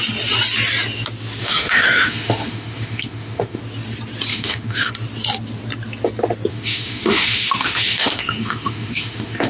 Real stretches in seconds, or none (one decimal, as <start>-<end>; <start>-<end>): 0.0-1.4; 3.6-4.3; 4.9-6.5